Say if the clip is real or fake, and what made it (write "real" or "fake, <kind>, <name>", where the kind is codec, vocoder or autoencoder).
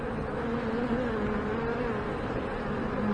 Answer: real